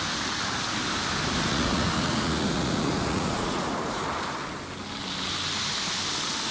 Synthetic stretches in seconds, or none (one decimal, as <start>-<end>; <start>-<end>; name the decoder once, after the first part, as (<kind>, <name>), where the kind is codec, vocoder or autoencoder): 1.5-4.0 (vocoder, Vocos)